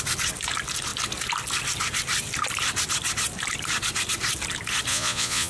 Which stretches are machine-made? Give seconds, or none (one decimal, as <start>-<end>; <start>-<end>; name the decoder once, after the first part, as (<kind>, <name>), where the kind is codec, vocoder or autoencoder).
4.9-5.5 (vocoder, Vocos)